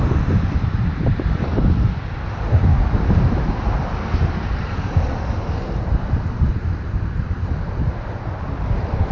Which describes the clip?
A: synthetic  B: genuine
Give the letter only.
A